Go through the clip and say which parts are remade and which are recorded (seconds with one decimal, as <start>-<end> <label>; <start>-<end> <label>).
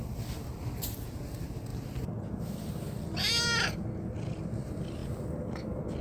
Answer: 0.0-1.7 recorded; 1.7-2.4 remade; 2.4-6.0 recorded